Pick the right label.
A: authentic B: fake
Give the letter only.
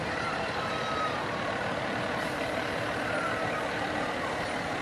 B